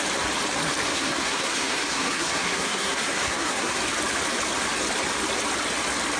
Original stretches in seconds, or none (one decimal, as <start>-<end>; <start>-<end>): 0.0-0.9; 3.8-6.2